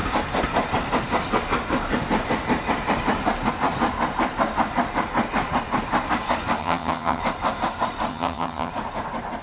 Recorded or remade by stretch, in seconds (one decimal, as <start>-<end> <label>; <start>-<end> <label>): 0.0-6.6 recorded; 6.6-7.2 remade; 7.2-8.1 recorded; 8.1-8.7 remade; 8.7-9.4 recorded

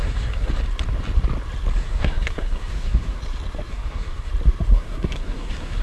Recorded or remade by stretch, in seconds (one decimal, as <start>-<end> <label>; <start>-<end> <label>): 0.0-0.5 remade; 0.5-1.8 recorded; 1.8-3.2 remade; 3.2-3.7 recorded; 3.7-4.3 remade; 4.3-4.7 recorded; 4.7-5.8 remade

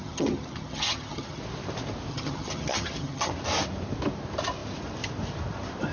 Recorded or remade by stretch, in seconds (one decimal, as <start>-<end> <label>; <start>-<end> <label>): 0.0-1.4 remade; 1.4-2.1 recorded; 2.1-3.3 remade; 3.3-5.9 recorded